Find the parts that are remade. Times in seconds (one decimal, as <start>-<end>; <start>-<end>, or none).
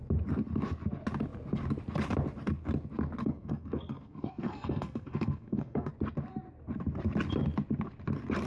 3.2-5.9